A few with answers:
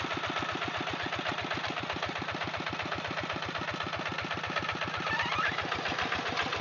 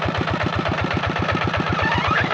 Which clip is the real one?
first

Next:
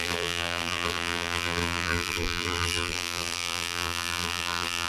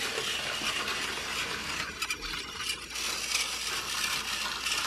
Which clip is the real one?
second